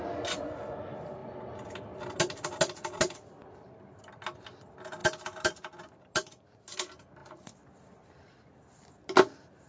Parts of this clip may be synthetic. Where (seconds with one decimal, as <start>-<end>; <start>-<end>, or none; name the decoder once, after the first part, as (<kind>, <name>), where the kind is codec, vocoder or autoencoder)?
none